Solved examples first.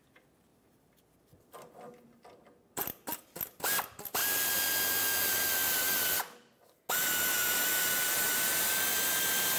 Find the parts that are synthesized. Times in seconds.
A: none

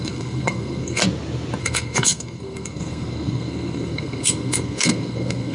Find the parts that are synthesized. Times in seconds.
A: 0.0-1.0 (codec, SNAC); 1.6-5.5

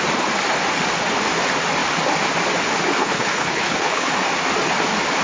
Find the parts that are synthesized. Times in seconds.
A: 3.0-4.1 (codec, HILCodec)

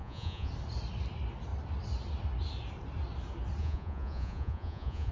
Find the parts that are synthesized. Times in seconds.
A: 0.0-0.5 (vocoder, Vocos); 3.6-5.1

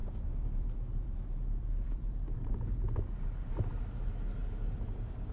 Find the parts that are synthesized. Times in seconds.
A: 0.0-2.2 (vocoder, BigVGAN v2); 4.4-5.3

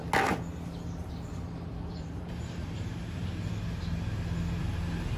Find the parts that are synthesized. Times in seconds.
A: 2.0-3.5 (vocoder, BigVGAN v2); 4.6-5.2

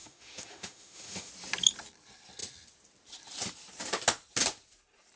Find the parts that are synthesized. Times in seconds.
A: 0.0-1.3 (autoencoder, DAC-VAE)

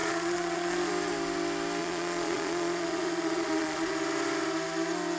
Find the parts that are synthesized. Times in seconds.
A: 0.0-0.9 (vocoder, Vocos); 1.8-3.9